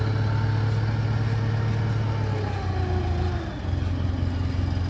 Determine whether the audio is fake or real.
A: real